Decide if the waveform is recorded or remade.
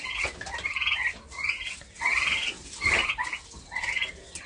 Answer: recorded